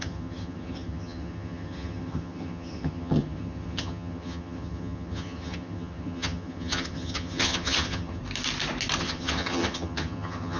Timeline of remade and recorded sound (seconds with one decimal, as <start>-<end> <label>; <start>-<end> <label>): 0.0-8.2 remade; 8.2-9.0 recorded; 9.0-10.6 remade